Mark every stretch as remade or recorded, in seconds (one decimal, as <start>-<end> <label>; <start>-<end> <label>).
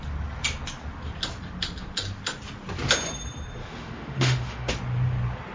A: 0.0-3.6 recorded; 3.6-4.7 remade; 4.7-5.5 recorded